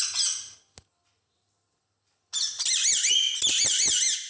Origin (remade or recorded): recorded